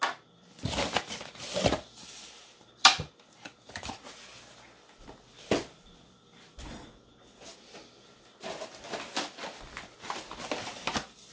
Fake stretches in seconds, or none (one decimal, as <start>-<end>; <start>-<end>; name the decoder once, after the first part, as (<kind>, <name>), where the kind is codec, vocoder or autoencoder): 2.4-3.9 (vocoder, BigVGAN v2)